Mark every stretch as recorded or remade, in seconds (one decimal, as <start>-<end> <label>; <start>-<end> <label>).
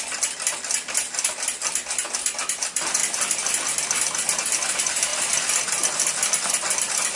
0.0-7.2 recorded